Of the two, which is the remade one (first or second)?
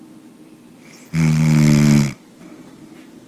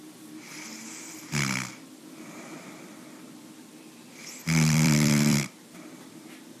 second